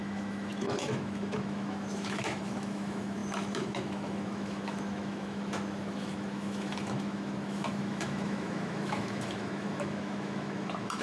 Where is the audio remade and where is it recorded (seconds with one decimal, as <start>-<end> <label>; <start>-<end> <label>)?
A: 0.0-11.0 remade